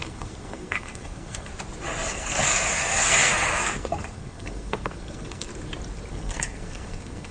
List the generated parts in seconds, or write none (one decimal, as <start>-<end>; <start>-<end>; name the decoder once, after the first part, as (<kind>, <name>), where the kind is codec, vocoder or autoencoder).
0.0-1.5 (codec, SNAC); 2.1-5.5; 6.1-7.3